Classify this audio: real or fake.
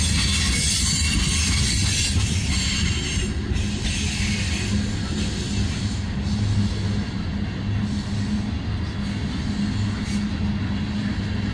real